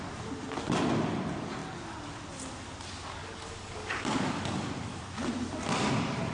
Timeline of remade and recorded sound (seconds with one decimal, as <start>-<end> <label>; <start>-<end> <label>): 0.0-3.2 recorded; 3.2-5.0 remade; 5.0-6.3 recorded